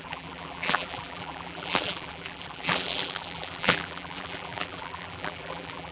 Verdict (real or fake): fake